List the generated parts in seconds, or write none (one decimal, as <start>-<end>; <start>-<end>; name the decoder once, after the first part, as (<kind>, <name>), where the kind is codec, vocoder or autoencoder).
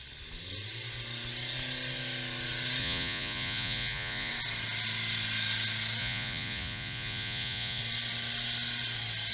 2.8-4.3 (vocoder, Vocos); 6.0-7.8